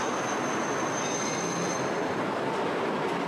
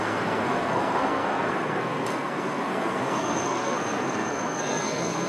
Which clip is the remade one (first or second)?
second